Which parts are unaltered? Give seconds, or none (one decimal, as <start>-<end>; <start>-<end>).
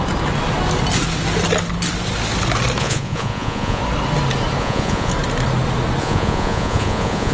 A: 0.0-2.8; 3.8-4.6; 5.1-6.0